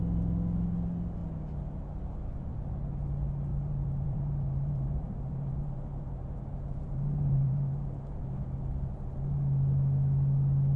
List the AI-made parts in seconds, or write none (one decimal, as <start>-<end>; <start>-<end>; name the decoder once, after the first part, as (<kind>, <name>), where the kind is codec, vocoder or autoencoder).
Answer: 3.5-8.2 (vocoder, BigVGAN v2)